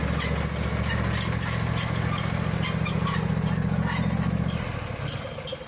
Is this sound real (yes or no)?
yes